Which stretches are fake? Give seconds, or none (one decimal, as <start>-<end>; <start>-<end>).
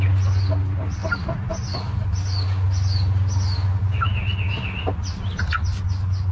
none